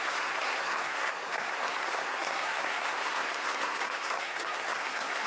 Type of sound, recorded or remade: remade